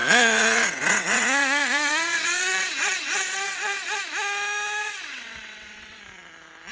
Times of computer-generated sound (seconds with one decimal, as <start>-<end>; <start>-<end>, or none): 0.0-4.0; 4.8-6.0